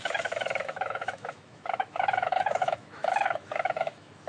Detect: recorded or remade remade